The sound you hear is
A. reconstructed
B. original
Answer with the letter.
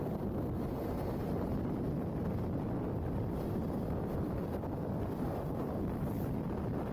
A